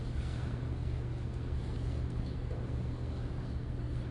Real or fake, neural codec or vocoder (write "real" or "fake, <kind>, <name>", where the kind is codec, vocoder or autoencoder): fake, codec, SNAC